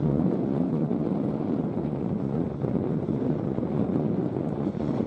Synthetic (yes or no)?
yes